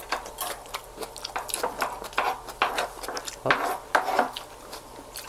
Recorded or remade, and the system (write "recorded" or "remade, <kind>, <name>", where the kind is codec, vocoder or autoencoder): recorded